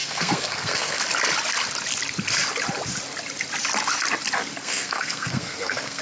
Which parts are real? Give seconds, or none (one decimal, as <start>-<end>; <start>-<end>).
1.0-4.6